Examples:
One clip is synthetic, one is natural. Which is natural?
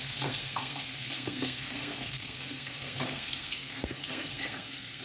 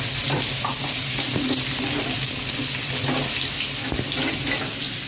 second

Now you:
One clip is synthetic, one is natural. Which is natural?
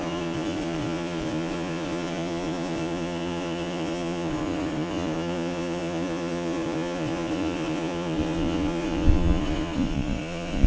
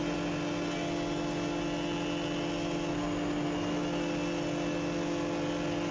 second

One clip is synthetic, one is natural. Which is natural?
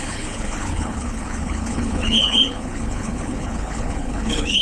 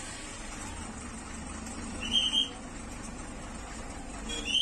second